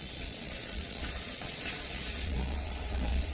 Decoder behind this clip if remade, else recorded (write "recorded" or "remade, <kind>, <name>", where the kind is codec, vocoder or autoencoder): remade, vocoder, Vocos